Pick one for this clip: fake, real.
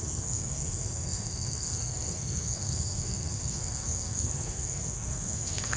fake